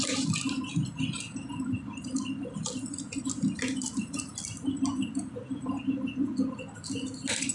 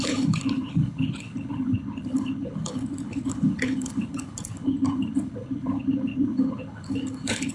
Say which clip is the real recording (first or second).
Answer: first